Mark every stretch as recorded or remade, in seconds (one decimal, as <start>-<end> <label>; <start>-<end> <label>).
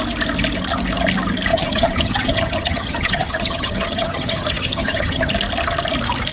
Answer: 0.0-1.5 recorded; 1.5-5.3 remade; 5.3-6.3 recorded